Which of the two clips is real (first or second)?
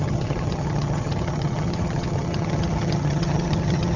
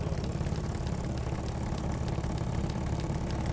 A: second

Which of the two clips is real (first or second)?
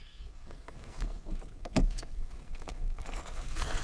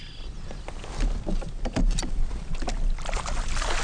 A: second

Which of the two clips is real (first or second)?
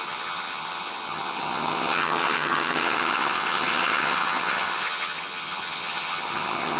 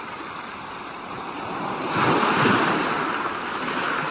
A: second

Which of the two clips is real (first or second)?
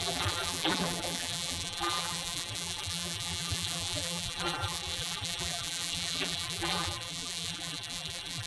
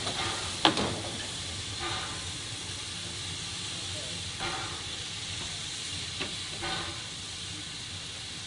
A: second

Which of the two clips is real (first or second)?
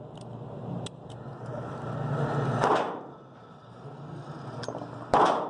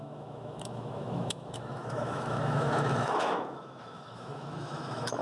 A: first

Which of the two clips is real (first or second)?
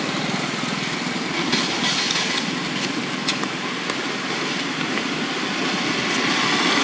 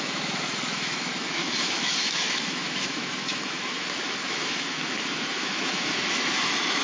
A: first